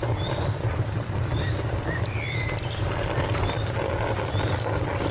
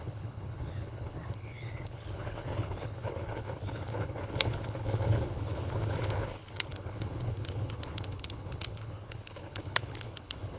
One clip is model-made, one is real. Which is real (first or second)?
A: first